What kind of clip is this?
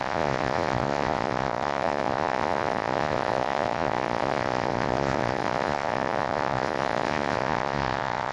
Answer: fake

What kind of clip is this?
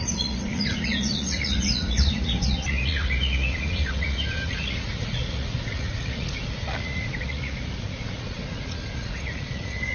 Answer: fake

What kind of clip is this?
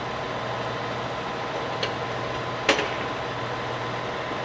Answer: real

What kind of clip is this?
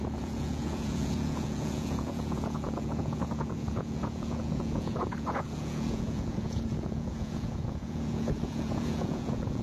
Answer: fake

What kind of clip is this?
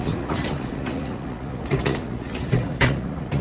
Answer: fake